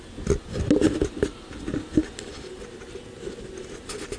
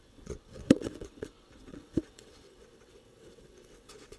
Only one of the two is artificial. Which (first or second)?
second